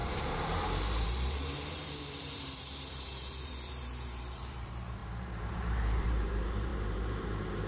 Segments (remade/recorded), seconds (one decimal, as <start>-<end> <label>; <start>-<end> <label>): 0.0-7.7 remade